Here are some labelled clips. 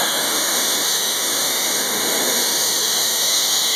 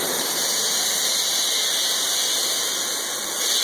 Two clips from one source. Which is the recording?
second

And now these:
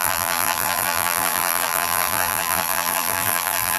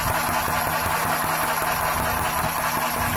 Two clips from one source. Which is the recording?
second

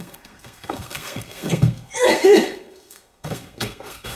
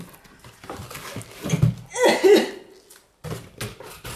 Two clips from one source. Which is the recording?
second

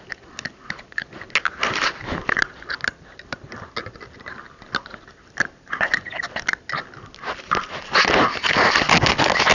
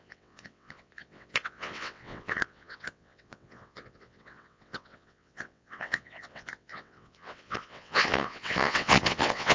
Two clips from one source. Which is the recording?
first